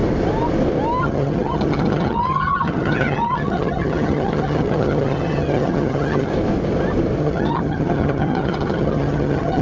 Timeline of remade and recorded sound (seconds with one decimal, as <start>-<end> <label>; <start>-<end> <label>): 0.0-1.0 recorded; 1.0-6.3 remade; 6.3-7.2 recorded; 7.2-9.6 remade